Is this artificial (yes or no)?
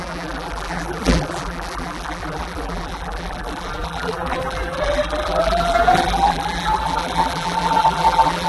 yes